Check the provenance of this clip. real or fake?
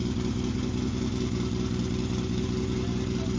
real